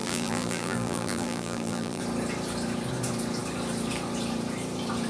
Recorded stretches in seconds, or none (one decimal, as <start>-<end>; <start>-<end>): 2.0-5.1